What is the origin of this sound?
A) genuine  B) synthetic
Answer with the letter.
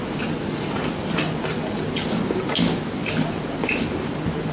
A